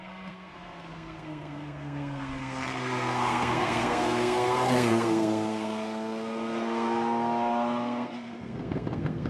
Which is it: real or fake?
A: fake